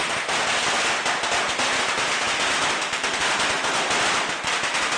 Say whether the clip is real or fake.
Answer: real